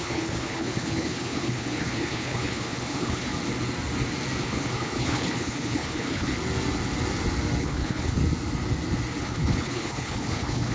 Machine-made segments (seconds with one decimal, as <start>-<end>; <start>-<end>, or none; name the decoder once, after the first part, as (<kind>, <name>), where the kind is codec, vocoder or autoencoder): 0.0-3.3 (codec, HILCodec); 4.4-6.3; 7.6-8.2; 9.2-10.7